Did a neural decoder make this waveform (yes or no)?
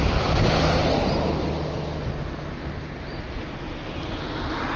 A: no